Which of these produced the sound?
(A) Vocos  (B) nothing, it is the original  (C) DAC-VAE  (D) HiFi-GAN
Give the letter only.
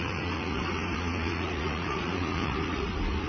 A